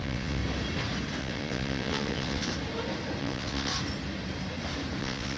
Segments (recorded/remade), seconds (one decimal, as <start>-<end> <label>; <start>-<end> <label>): 0.0-0.4 remade; 0.4-1.2 recorded; 1.2-2.5 remade; 2.5-3.2 recorded; 3.2-3.7 remade; 3.7-5.0 recorded; 5.0-5.4 remade

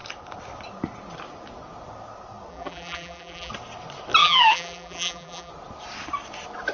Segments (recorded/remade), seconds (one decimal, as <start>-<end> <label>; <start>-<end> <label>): 0.0-2.5 recorded; 2.5-3.5 remade; 3.5-4.2 recorded; 4.2-5.5 remade; 5.5-6.7 recorded